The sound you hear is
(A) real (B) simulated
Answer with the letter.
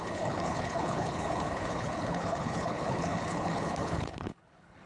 B